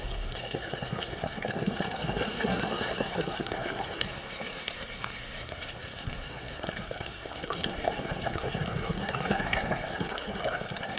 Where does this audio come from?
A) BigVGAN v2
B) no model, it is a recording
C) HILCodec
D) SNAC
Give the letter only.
D